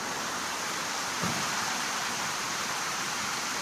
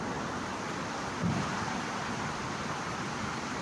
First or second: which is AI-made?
first